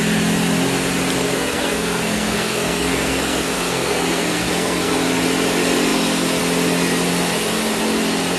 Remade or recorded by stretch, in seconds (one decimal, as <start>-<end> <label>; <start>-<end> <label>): 0.0-1.2 recorded; 1.2-5.0 remade; 5.0-8.4 recorded